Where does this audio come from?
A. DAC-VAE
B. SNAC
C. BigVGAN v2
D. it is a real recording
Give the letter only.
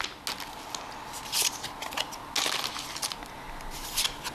D